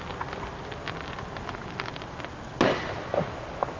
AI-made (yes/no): no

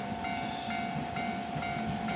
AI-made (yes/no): no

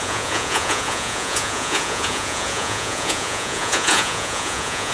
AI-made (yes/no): yes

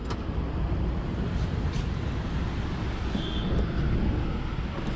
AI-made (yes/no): no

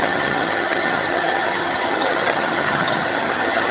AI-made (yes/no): yes